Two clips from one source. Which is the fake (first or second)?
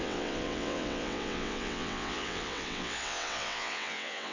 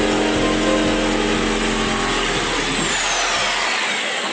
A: first